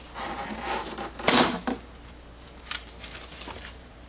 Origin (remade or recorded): remade